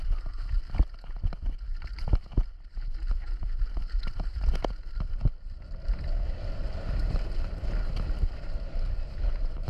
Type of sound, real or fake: real